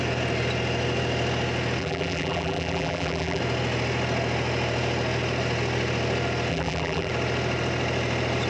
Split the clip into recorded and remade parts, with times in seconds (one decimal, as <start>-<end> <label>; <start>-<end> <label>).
0.0-1.8 recorded; 1.8-3.4 remade; 3.4-6.5 recorded; 6.5-7.1 remade; 7.1-8.5 recorded